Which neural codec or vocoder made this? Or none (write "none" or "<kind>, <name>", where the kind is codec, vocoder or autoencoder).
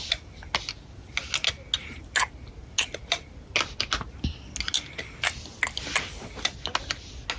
none